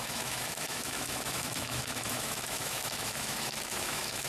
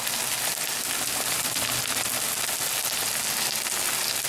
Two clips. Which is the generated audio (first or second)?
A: first